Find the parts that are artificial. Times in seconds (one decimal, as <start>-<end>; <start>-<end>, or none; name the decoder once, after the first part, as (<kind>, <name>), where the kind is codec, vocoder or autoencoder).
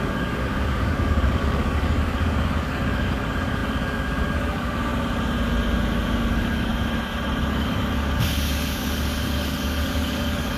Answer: 0.0-4.9 (codec, DAC); 6.3-6.7; 7.5-10.6